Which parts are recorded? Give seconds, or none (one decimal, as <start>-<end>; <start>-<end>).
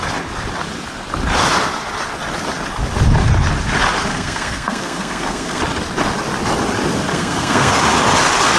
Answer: 0.0-4.1; 5.6-7.1; 7.7-8.6